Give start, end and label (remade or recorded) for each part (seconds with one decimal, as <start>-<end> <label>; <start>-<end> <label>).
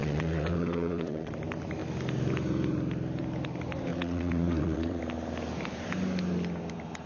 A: 0.0-1.3 remade; 1.3-3.9 recorded; 3.9-5.0 remade; 5.0-7.1 recorded